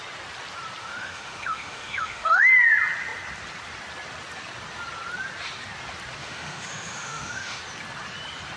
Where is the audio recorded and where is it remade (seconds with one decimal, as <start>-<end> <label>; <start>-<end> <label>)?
0.0-0.8 recorded; 0.8-2.5 remade; 2.5-6.2 recorded; 6.2-7.6 remade; 7.6-8.6 recorded